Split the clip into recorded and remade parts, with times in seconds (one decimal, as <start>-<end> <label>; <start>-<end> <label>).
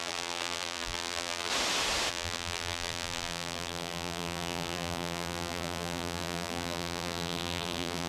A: 0.0-1.5 remade; 1.5-2.1 recorded; 2.1-8.1 remade